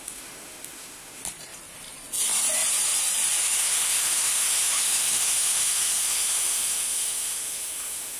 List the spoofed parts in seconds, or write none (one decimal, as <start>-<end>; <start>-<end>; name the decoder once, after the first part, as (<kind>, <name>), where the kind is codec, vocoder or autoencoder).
0.0-1.2 (autoencoder, DAC-VAE); 3.4-8.2